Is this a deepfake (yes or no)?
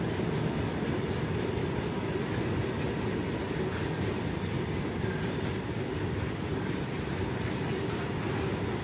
no